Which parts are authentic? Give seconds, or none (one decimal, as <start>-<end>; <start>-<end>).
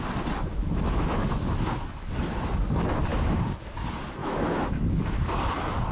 0.0-0.5; 2.5-4.2; 5.0-5.9